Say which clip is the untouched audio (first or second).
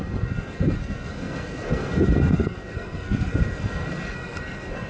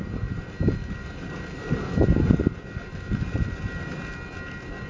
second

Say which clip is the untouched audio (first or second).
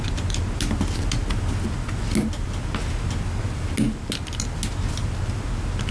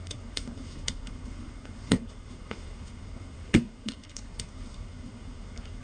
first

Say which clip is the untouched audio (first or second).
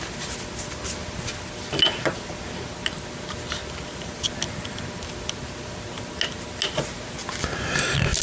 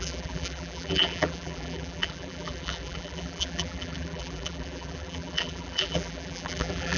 first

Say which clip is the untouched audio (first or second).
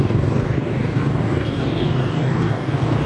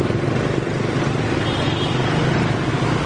second